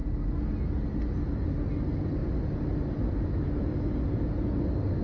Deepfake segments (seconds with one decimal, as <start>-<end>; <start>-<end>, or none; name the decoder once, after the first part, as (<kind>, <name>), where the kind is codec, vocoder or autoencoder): none